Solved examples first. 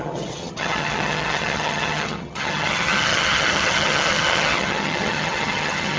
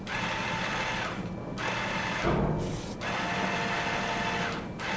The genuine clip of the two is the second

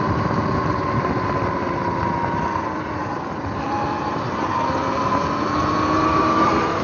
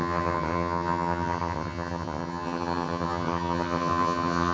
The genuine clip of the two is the first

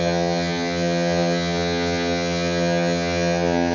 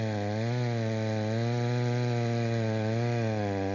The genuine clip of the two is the second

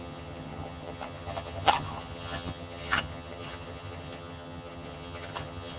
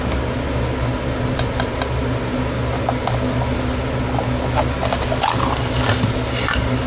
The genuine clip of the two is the second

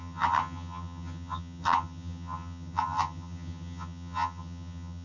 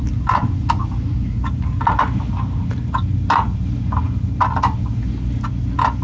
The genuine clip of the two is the second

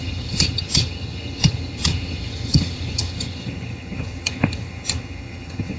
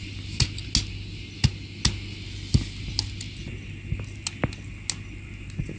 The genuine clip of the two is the second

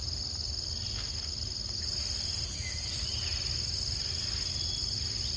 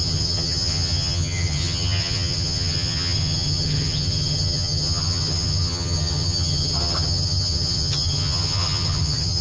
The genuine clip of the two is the first